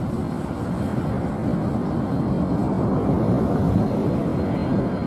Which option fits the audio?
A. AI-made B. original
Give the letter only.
B